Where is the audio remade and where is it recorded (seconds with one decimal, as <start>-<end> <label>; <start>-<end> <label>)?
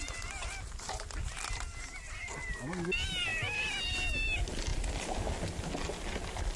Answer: 0.0-6.6 recorded